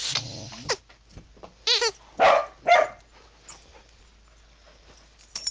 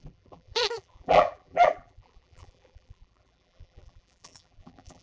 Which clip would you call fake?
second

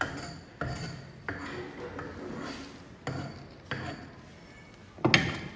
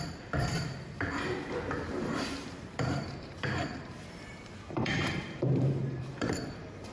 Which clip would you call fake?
second